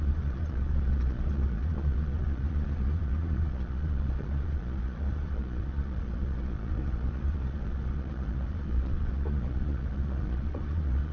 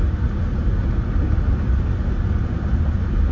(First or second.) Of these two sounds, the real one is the second